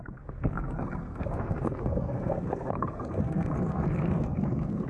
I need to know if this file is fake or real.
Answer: fake